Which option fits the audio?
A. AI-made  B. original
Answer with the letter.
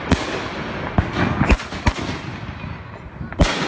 B